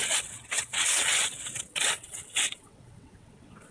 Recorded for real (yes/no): no